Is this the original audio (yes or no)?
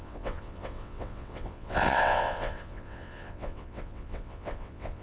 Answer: no